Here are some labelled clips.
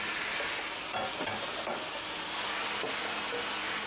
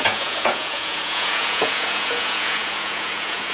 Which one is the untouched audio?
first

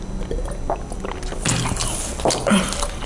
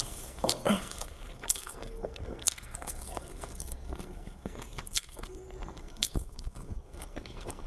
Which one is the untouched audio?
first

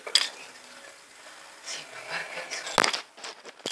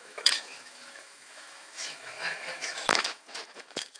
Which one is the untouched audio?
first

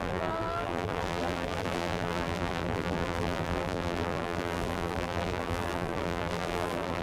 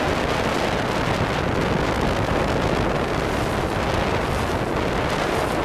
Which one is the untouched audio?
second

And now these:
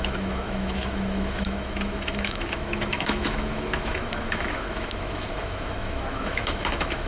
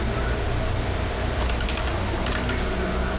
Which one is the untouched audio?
second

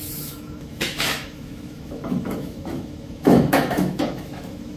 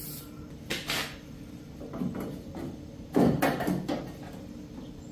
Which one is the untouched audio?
second